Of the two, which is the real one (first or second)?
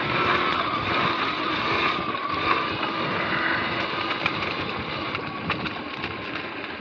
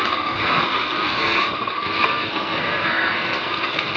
first